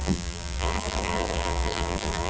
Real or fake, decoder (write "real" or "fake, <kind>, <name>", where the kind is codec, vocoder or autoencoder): fake, vocoder, BigVGAN v2